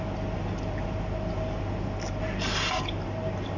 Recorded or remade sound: recorded